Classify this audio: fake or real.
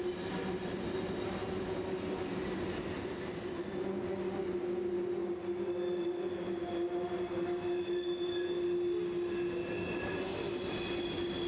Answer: real